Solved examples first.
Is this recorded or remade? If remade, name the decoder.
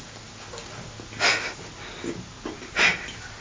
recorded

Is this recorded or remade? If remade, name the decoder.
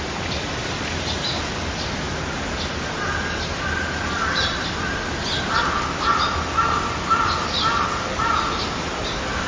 recorded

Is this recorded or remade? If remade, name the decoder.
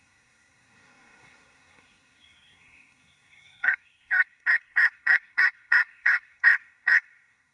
remade, codec, SNAC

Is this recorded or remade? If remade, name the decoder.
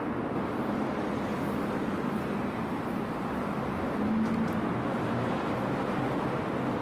recorded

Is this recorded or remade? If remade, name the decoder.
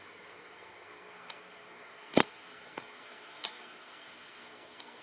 remade, codec, SNAC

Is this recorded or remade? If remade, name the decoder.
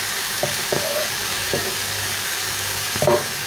remade, codec, DAC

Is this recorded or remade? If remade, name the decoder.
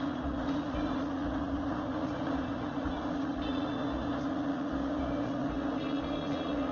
remade, vocoder, Vocos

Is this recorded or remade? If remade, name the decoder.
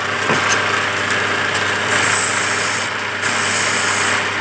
recorded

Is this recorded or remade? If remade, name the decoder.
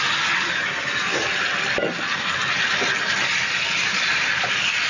recorded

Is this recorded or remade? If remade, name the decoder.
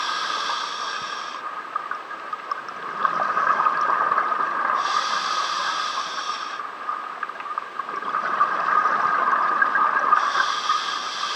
recorded